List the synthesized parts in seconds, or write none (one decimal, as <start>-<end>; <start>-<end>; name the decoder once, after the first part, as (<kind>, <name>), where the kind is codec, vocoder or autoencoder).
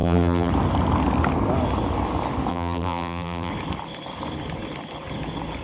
0.0-0.5 (vocoder, BigVGAN v2); 2.5-3.5